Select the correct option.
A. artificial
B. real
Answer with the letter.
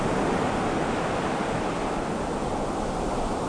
B